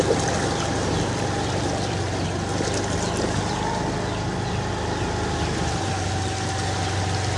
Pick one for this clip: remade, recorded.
recorded